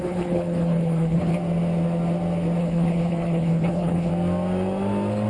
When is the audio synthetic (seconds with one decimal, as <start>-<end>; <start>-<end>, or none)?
0.0-1.3; 2.6-4.1